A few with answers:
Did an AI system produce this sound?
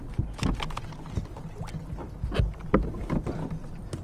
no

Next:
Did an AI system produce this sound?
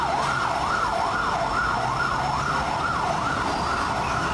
no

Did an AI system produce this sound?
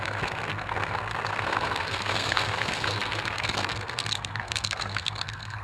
yes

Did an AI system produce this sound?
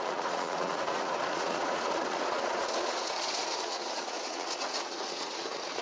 yes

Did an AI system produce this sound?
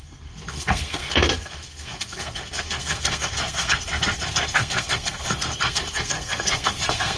yes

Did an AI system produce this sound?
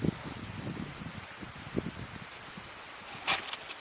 no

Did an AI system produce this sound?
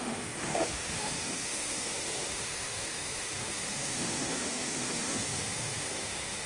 yes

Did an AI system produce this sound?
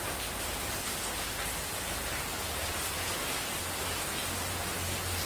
no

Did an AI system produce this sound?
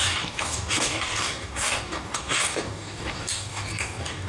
yes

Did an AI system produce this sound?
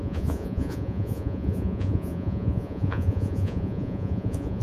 yes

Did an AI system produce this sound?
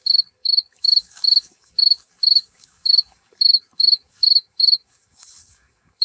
yes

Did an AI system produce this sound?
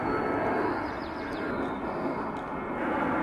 no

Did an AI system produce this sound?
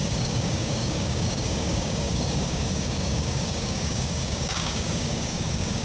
yes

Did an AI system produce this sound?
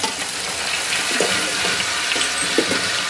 no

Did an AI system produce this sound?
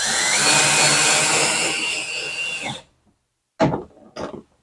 no